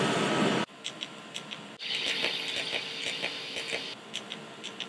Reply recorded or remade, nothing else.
recorded